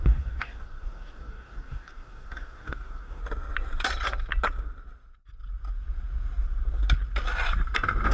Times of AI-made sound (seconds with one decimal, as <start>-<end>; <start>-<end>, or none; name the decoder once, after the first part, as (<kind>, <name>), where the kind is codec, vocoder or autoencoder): 0.0-3.2 (codec, DAC)